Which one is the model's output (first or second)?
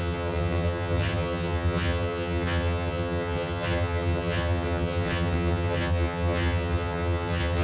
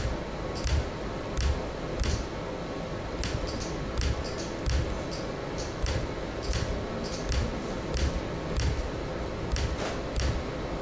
first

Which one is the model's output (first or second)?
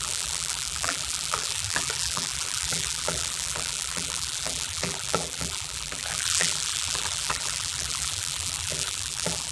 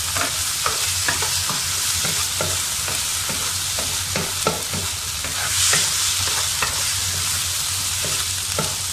first